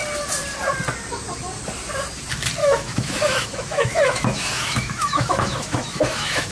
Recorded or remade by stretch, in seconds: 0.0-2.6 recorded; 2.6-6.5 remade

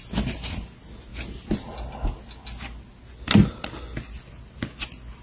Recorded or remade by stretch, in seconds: 0.0-5.2 recorded